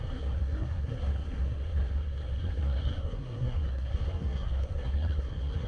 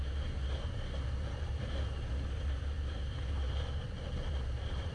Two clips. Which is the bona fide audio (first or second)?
second